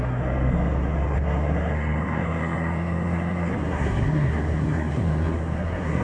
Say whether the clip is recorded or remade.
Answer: remade